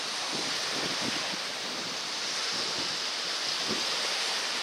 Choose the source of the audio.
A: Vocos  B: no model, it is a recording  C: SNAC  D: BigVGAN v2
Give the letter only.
D